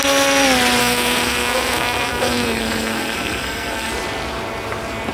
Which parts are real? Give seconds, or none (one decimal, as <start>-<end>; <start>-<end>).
0.0-0.8; 3.9-5.1